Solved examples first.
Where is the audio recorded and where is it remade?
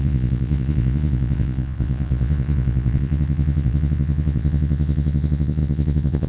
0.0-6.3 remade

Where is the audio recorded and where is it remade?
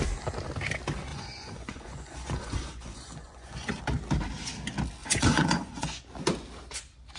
0.0-1.1 recorded; 1.1-3.8 remade; 3.8-5.0 recorded; 5.0-6.0 remade; 6.0-7.2 recorded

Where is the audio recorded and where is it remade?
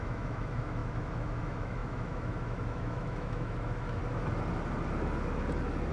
0.0-4.0 remade; 4.0-5.9 recorded